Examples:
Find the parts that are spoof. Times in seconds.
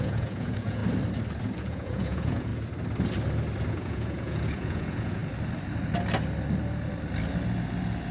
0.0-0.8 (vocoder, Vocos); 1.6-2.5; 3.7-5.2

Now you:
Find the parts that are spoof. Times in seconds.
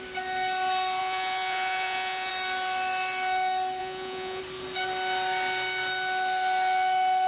1.0-2.3 (vocoder, Vocos); 3.8-4.4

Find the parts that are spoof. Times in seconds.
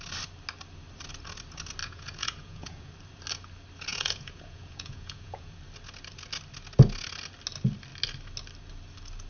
1.8-2.9 (vocoder, Vocos); 3.9-5.6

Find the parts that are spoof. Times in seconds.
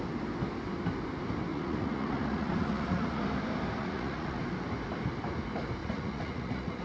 1.5-3.2 (vocoder, Vocos); 3.8-4.4; 5.8-6.8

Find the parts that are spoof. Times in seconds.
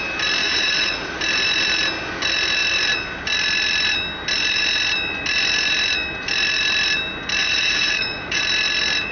0.4-1.2 (vocoder, Vocos); 7.4-8.4